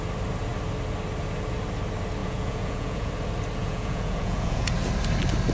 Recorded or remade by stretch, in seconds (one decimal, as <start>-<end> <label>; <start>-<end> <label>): 0.0-2.2 recorded; 2.2-3.1 remade; 3.1-3.6 recorded; 3.6-4.7 remade; 4.7-5.5 recorded